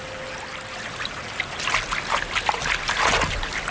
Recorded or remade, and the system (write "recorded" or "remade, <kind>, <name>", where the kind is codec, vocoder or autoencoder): recorded